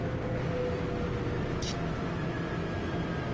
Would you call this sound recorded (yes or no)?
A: yes